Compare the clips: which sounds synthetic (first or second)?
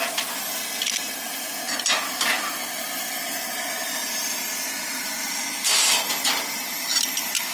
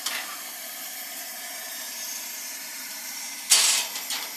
second